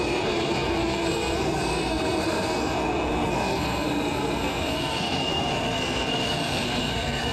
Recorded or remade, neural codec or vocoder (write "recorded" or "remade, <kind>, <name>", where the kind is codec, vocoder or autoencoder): remade, codec, SNAC